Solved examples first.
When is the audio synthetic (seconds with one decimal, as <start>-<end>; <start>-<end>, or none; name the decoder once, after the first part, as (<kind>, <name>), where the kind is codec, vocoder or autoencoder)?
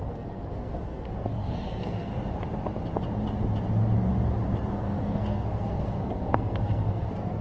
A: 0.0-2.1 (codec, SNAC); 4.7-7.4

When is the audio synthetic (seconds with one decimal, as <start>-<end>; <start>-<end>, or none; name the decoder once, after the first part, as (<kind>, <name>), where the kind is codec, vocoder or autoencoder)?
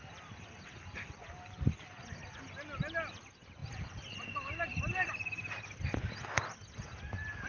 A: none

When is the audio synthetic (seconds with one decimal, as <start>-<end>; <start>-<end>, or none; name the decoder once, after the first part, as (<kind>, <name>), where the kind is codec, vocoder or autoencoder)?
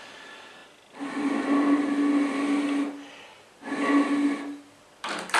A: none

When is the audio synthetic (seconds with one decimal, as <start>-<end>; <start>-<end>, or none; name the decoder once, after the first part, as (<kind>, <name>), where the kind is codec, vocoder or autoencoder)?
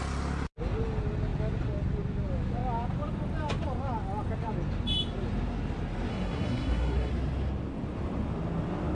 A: 6.1-7.1 (codec, SNAC)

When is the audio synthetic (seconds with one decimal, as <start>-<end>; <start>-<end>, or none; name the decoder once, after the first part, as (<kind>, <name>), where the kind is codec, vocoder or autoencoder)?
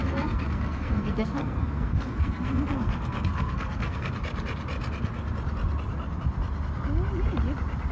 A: 0.0-4.1 (codec, SNAC)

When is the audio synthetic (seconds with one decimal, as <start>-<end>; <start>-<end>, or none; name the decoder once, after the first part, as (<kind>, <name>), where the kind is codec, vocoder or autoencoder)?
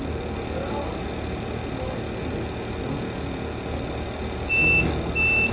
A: none